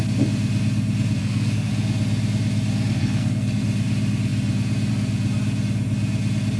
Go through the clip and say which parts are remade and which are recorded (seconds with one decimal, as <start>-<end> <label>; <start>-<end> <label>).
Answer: 0.0-1.2 recorded; 1.2-1.7 remade; 1.7-3.0 recorded; 3.0-3.6 remade; 3.6-6.6 recorded